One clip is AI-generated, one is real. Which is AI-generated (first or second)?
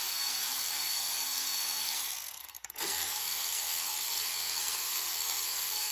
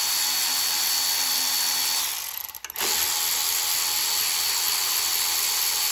first